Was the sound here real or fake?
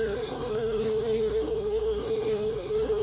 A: fake